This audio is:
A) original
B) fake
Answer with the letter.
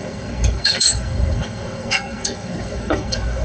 B